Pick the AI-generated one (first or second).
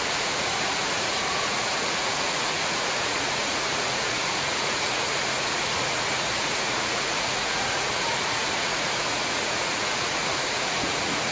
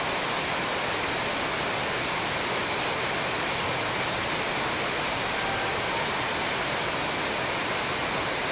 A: first